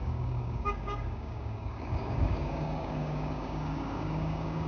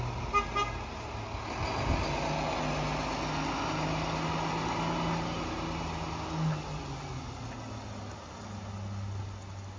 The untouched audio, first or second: second